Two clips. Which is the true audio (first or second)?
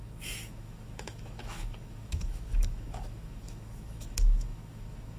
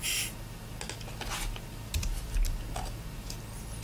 second